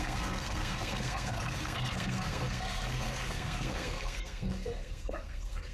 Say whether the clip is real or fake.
fake